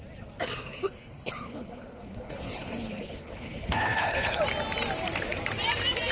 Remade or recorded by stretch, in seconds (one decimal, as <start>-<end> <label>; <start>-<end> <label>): 0.0-0.7 recorded; 0.7-4.4 remade; 4.4-6.1 recorded